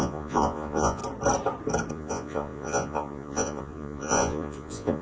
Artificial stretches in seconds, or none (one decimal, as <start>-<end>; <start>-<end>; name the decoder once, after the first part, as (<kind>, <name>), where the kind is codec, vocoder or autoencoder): 0.0-1.0 (vocoder, Vocos); 1.9-5.0